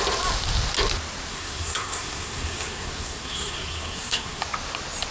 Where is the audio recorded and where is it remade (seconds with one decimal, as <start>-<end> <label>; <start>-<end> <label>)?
0.0-1.3 recorded; 1.3-4.4 remade; 4.4-5.1 recorded